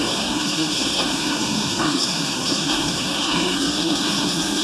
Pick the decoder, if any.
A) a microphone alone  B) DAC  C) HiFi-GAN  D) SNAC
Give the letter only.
D